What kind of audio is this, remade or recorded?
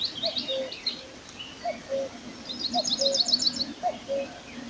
recorded